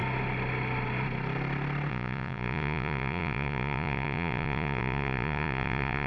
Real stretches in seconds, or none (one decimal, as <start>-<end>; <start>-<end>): 0.0-1.9